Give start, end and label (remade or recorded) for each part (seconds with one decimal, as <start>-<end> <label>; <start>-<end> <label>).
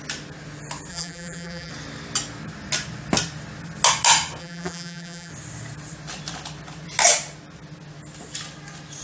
0.0-0.9 recorded; 0.9-1.7 remade; 1.7-4.4 recorded; 4.4-5.3 remade; 5.3-9.0 recorded